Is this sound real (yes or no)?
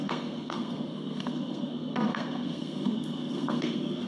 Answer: no